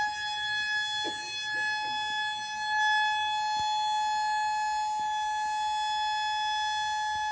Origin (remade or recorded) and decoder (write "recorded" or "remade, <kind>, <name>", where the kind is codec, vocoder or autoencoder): recorded